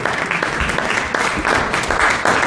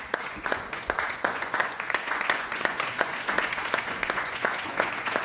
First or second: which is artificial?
second